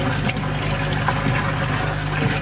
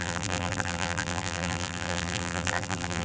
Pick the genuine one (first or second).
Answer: first